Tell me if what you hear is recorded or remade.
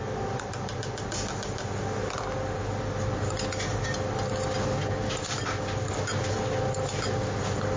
recorded